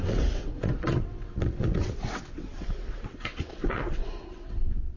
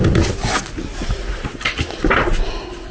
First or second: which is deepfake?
first